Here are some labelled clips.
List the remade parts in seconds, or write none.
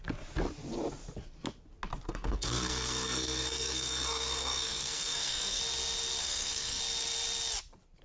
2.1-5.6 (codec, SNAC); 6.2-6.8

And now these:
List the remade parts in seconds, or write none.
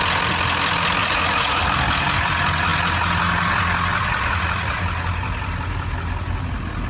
1.0-1.6 (vocoder, Vocos); 4.0-4.8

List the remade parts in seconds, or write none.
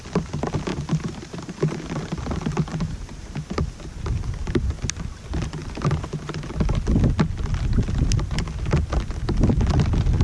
0.7-1.6 (vocoder, BigVGAN v2); 2.7-3.3; 5.6-6.3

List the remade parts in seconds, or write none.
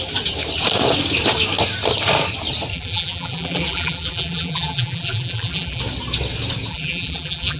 2.7-5.8 (vocoder, BigVGAN v2); 6.7-7.6